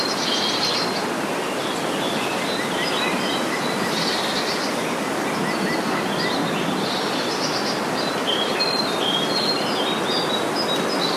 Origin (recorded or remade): recorded